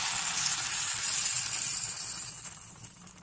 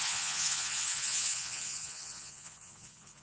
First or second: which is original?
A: first